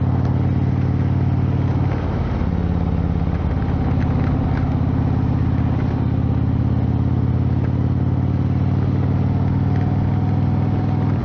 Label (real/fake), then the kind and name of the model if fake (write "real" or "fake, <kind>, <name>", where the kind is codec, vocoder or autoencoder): real